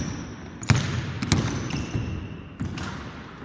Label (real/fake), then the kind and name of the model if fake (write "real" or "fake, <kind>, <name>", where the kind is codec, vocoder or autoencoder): real